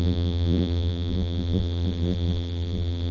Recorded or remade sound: remade